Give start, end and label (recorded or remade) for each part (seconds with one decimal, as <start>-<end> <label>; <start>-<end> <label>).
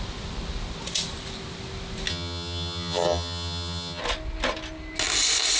0.0-2.1 recorded; 2.1-4.0 remade; 4.0-5.6 recorded